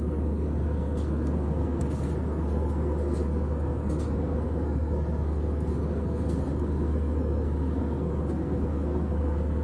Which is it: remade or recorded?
remade